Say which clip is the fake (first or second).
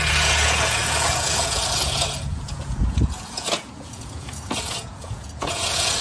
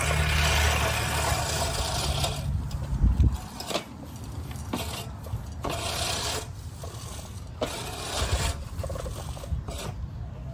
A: first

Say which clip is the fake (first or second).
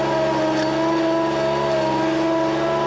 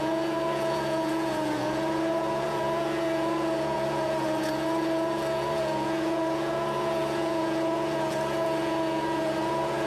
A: second